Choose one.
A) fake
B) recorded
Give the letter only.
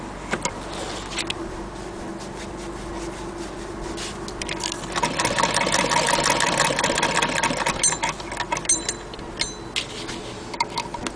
B